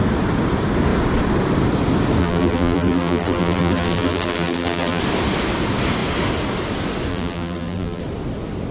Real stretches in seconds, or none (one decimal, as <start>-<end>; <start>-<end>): 0.0-2.2; 5.0-7.1; 8.0-8.7